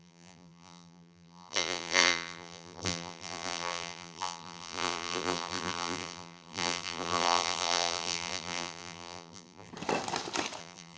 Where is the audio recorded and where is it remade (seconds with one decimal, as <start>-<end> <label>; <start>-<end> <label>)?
0.0-9.7 remade; 9.7-10.6 recorded; 10.6-11.0 remade